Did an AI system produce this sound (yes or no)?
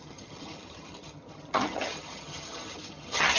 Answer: yes